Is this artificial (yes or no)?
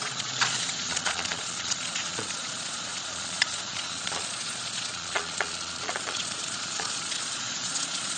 yes